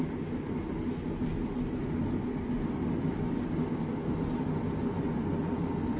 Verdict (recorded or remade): recorded